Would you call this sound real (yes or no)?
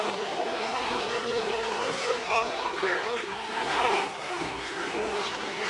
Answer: no